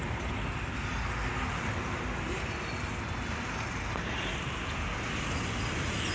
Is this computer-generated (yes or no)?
no